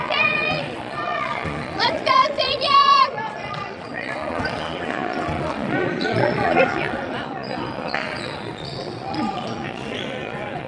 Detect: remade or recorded remade